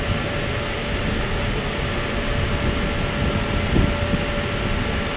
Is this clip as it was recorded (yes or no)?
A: yes